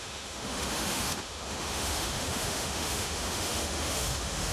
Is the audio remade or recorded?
remade